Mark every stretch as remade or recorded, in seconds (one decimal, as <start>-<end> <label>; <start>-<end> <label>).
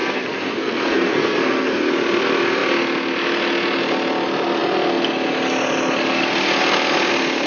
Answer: 0.0-1.9 remade; 1.9-7.5 recorded